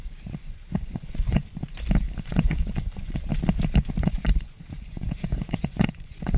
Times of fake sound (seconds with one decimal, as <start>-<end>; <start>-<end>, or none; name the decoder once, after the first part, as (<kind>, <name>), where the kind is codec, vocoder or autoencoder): 0.0-1.4 (vocoder, Vocos); 2.2-3.3; 3.9-6.4